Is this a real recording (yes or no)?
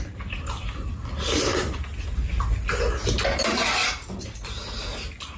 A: yes